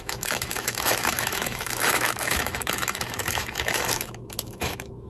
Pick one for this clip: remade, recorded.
remade